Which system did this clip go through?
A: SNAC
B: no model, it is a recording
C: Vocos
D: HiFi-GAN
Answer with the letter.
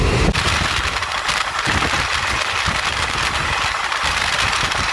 B